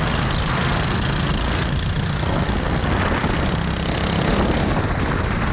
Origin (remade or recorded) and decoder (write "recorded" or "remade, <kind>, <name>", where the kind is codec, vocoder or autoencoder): recorded